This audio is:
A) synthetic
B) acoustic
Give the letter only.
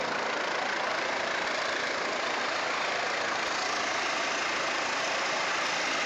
B